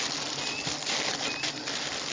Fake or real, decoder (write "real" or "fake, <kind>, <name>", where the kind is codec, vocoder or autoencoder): real